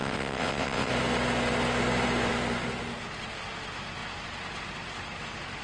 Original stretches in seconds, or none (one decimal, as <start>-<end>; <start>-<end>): 0.9-5.6